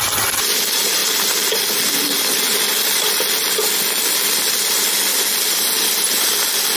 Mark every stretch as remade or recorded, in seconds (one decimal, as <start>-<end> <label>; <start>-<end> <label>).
0.0-6.8 recorded